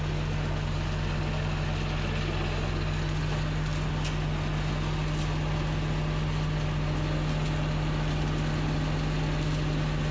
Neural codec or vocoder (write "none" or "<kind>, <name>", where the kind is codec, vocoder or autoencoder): none